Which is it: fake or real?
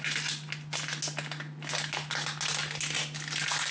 real